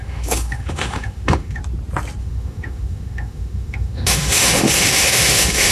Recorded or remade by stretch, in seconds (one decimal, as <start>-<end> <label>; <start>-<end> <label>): 0.0-1.6 remade; 1.6-2.2 recorded; 2.2-5.7 remade